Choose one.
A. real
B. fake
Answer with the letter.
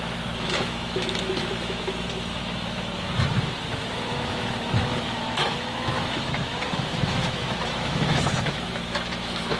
B